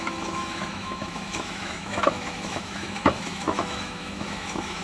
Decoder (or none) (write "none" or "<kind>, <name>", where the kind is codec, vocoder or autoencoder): autoencoder, DAC-VAE